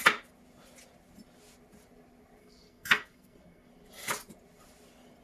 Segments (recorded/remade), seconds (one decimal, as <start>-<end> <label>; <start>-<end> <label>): 0.0-2.4 recorded; 2.4-3.7 remade; 3.7-5.2 recorded